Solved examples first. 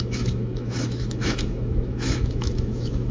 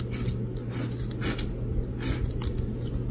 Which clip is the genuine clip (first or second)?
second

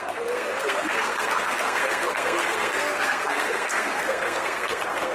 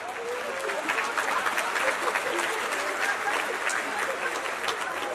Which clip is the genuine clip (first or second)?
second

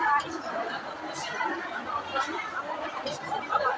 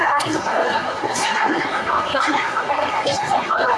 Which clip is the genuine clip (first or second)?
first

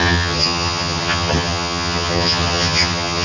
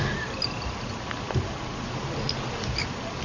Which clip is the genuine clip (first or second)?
second